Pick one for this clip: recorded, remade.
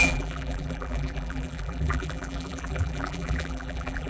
remade